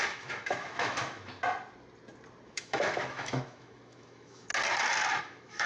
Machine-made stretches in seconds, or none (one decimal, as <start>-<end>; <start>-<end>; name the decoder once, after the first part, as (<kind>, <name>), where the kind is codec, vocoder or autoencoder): 0.0-1.4 (autoencoder, DAC-VAE); 2.5-4.5; 5.2-5.7